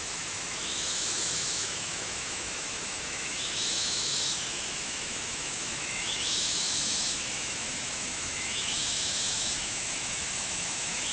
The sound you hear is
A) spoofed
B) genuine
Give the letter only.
A